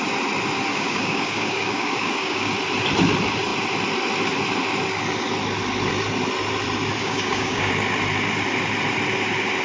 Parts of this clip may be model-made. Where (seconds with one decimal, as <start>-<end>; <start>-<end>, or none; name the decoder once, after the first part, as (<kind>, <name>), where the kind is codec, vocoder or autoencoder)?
0.7-2.5 (codec, DAC); 7.0-7.7